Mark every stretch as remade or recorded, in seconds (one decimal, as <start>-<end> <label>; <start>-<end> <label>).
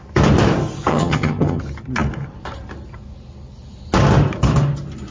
0.0-0.9 recorded; 0.9-1.6 remade; 1.6-5.1 recorded